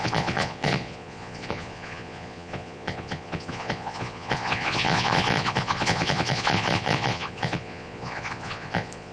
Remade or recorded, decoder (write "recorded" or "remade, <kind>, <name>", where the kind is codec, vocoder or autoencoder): remade, vocoder, Vocos